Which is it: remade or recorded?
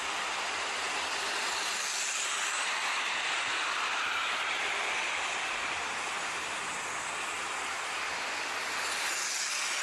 recorded